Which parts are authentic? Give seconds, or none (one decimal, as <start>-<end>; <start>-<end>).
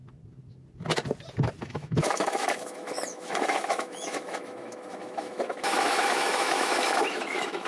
0.0-1.6